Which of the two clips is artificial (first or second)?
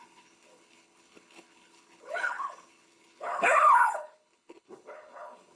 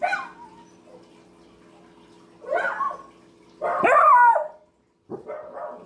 first